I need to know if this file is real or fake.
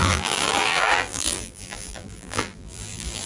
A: fake